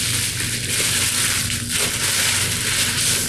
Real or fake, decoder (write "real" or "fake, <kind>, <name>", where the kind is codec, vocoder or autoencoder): real